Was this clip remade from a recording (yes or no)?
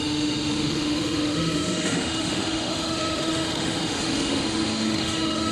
yes